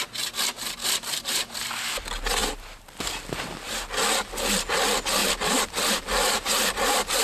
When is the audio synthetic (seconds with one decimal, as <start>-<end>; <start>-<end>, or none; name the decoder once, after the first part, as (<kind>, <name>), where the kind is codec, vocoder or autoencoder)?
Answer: 0.8-1.9 (vocoder, BigVGAN v2); 2.4-3.2; 5.2-5.9